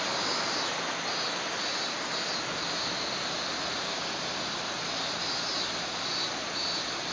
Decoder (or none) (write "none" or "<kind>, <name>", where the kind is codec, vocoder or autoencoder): vocoder, BigVGAN v2